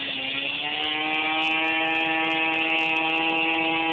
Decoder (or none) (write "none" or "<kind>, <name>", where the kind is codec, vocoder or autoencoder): none